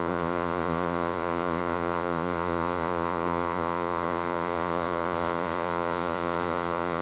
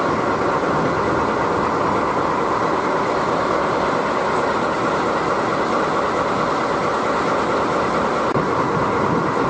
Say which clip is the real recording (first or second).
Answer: second